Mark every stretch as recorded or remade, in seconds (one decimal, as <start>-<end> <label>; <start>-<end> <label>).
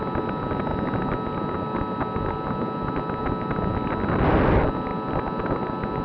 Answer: 0.0-6.0 recorded